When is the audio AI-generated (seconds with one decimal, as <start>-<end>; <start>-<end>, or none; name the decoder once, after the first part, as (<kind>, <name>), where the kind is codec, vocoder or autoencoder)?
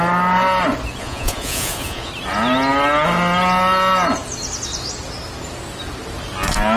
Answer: 1.0-2.1 (vocoder, Vocos)